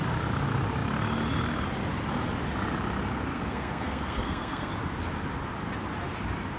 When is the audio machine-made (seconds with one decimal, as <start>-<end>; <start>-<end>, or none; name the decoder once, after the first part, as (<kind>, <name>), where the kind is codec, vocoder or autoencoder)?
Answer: 3.3-4.7 (codec, SNAC)